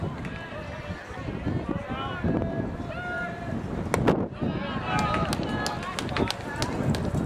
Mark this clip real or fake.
real